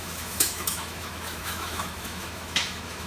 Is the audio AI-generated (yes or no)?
yes